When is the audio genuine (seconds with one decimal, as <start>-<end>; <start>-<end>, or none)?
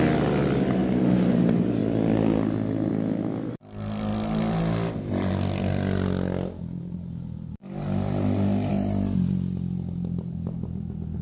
0.0-11.2